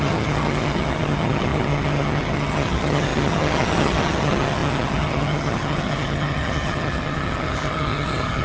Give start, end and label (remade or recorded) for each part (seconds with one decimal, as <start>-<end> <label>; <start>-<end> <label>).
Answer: 0.0-8.4 remade